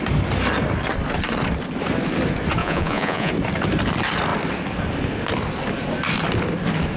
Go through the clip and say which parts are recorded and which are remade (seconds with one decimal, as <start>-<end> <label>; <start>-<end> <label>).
0.0-2.6 recorded; 2.6-3.3 remade; 3.3-7.0 recorded